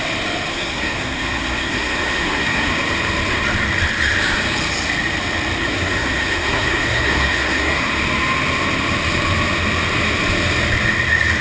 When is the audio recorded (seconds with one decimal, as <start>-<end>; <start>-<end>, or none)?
0.0-0.5; 2.7-5.6; 7.9-11.4